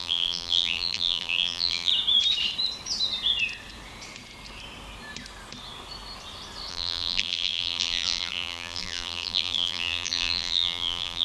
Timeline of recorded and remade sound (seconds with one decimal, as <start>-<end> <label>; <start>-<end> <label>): 0.0-1.9 remade; 1.9-6.7 recorded; 6.7-11.2 remade